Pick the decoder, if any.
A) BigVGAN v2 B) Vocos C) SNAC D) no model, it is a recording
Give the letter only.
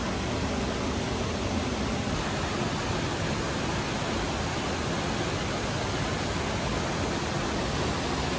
D